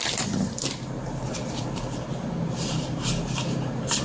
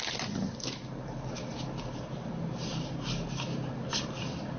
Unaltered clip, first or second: second